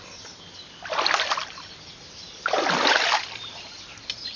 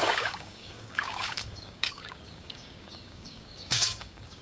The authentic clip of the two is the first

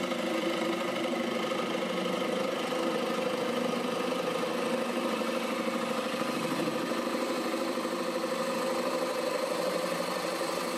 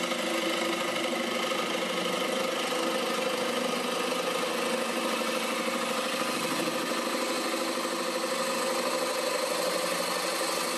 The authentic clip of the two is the second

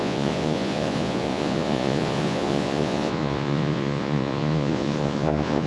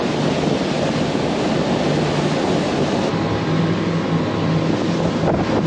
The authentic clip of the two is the second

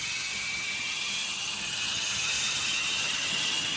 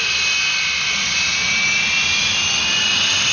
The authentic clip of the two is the second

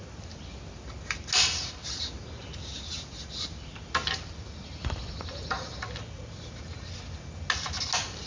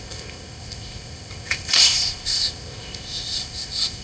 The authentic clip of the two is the first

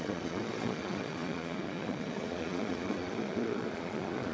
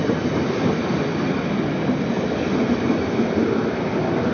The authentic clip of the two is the second